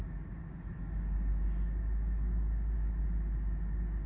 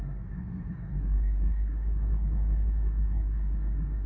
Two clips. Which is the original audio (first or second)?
first